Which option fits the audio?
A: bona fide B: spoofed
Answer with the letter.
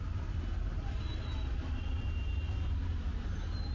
A